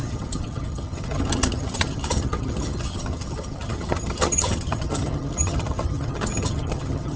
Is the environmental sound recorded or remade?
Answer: remade